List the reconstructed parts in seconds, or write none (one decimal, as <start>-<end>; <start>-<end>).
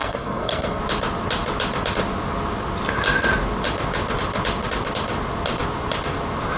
0.0-0.8